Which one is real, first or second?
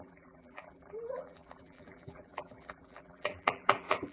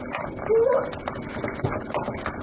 second